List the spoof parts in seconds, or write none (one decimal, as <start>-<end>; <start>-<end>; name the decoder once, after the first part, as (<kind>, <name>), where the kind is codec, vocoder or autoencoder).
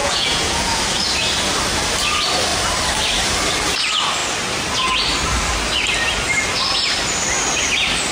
0.0-0.8 (vocoder, Vocos)